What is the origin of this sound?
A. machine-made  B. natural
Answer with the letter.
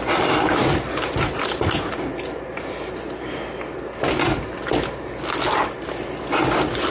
B